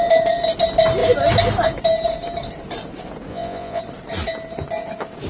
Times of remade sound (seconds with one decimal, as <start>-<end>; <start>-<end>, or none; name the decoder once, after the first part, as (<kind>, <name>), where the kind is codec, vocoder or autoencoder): 3.3-3.8 (vocoder, Vocos)